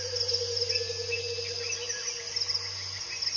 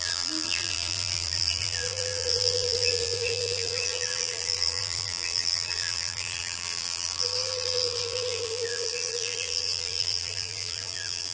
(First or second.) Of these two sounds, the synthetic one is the second